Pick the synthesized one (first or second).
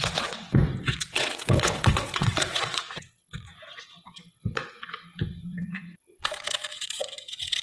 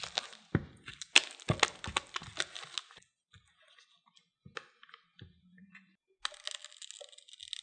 first